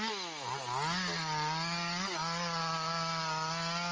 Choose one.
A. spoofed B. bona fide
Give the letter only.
B